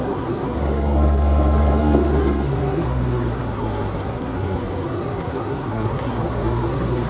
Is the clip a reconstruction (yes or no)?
yes